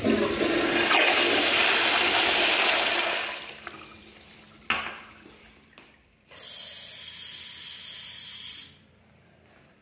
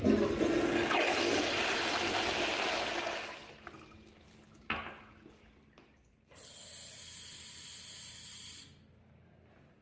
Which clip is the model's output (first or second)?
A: first